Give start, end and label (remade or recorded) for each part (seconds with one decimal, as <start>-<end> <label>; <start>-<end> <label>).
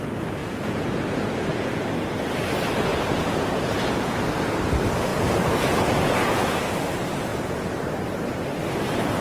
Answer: 0.0-0.4 recorded; 0.4-1.8 remade; 1.8-2.9 recorded; 2.9-4.2 remade; 4.2-5.1 recorded; 5.1-6.6 remade; 6.6-7.3 recorded; 7.3-7.8 remade; 7.8-9.2 recorded